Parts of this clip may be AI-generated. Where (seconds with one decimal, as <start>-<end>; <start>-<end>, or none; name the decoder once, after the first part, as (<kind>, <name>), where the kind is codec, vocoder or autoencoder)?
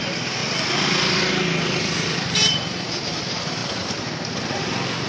0.0-0.4 (vocoder, BigVGAN v2); 1.8-3.6